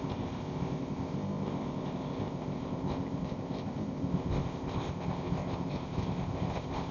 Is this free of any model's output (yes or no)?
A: no